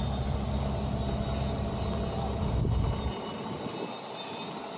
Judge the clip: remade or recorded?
recorded